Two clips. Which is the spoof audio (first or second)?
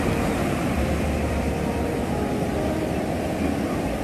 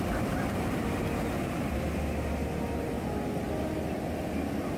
first